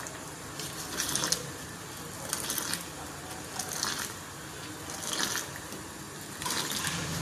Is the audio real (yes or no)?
yes